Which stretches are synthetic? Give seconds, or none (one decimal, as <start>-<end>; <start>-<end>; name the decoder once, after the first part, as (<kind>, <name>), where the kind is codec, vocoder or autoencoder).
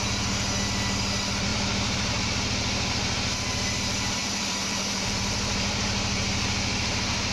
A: 1.5-2.3 (vocoder, BigVGAN v2); 4.2-7.3